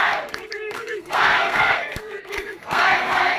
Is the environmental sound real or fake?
fake